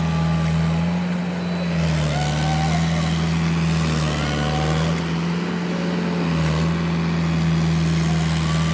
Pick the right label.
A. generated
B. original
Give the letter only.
B